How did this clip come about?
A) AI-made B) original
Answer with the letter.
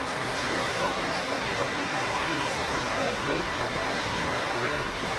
A